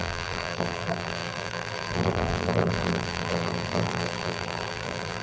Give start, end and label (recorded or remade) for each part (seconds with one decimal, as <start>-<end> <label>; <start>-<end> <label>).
0.0-5.2 remade